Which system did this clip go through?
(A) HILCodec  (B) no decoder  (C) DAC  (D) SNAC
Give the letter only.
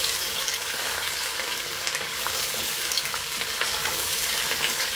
C